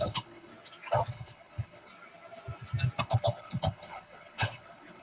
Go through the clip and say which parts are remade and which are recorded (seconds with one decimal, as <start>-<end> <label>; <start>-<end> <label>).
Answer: 0.0-0.5 remade; 0.5-1.1 recorded; 1.1-1.9 remade; 1.9-3.0 recorded; 3.0-5.0 remade